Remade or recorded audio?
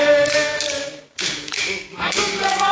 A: remade